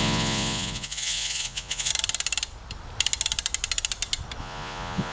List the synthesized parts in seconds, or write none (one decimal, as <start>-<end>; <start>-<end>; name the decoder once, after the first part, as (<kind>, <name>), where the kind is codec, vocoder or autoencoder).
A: 0.0-1.9 (vocoder, Vocos); 4.4-5.1